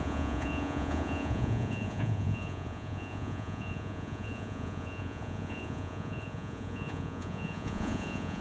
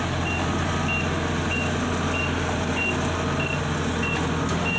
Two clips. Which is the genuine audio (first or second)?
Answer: second